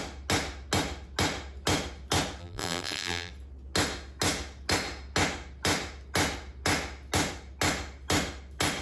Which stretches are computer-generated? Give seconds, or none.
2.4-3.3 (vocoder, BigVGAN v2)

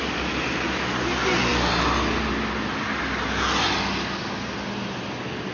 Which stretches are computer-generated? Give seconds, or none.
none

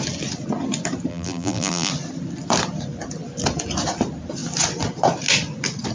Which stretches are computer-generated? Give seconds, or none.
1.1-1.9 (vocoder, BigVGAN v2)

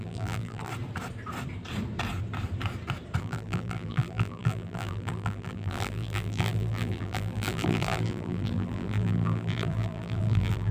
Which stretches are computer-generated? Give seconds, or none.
0.0-0.7 (vocoder, BigVGAN v2); 3.2-10.7

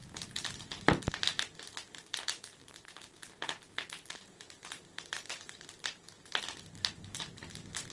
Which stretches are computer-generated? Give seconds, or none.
2.6-6.4 (vocoder, BigVGAN v2)

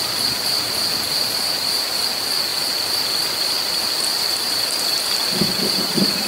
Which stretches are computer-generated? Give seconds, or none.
0.0-2.5 (vocoder, BigVGAN v2); 4.1-6.3